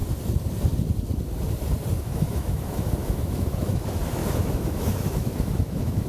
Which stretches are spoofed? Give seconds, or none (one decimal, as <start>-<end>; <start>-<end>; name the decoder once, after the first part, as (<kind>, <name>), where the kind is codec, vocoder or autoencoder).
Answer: 2.0-6.1 (autoencoder, DAC-VAE)